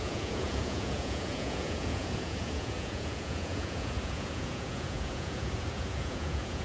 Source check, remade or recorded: remade